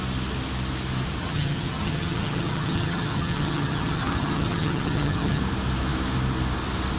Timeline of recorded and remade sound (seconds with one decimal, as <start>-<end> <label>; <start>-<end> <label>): 0.0-1.2 recorded; 1.2-5.4 remade; 5.4-7.0 recorded